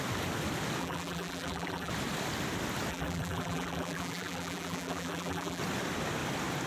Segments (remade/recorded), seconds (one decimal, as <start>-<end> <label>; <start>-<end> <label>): 0.0-0.8 recorded; 0.8-1.9 remade; 1.9-2.9 recorded; 2.9-5.6 remade; 5.6-6.7 recorded